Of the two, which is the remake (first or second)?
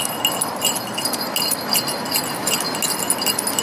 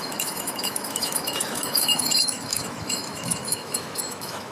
second